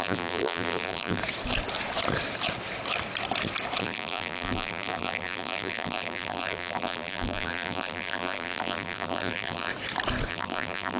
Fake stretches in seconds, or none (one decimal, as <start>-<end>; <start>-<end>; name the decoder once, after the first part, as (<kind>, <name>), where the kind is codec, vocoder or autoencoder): 0.0-1.2 (vocoder, BigVGAN v2); 3.8-9.7; 10.3-11.0